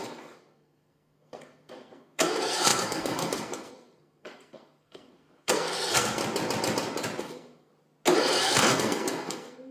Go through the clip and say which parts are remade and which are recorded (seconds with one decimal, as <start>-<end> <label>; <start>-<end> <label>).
0.0-6.2 remade; 6.2-7.2 recorded; 7.2-7.7 remade; 7.7-8.2 recorded; 8.2-9.7 remade